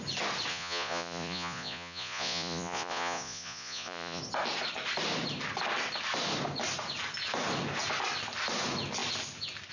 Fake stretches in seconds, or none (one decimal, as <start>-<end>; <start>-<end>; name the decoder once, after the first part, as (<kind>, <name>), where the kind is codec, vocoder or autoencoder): 0.5-4.2 (vocoder, Vocos)